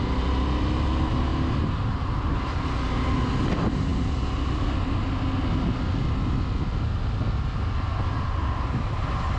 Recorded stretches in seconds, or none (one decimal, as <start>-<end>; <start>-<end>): 0.0-9.4